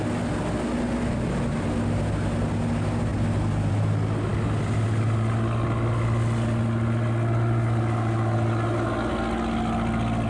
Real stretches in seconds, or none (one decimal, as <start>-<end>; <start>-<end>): 0.0-10.3